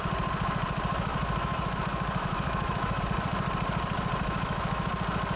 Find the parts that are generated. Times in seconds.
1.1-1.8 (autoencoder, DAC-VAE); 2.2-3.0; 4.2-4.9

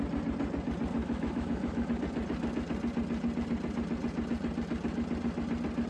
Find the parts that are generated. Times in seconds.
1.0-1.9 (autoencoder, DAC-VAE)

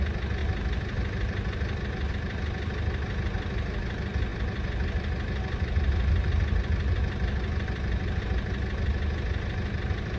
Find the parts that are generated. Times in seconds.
none